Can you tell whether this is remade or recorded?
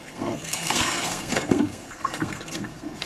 remade